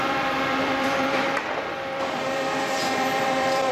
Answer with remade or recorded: remade